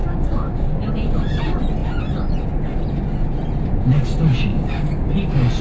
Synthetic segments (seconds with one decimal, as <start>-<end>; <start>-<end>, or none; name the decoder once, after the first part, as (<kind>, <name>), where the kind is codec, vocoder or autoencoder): 0.0-0.9 (codec, DAC); 4.5-5.0